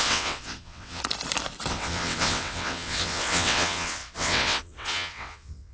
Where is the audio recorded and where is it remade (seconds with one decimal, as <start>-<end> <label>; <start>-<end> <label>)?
0.0-1.0 remade; 1.0-1.7 recorded; 1.7-5.7 remade